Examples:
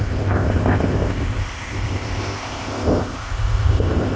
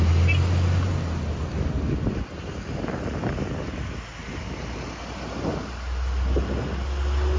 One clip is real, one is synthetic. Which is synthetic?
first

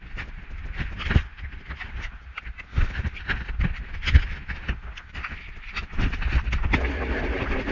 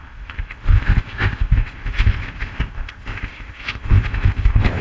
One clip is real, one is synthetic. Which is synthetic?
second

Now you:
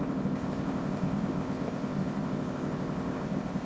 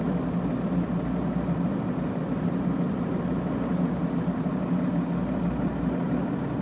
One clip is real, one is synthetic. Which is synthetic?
first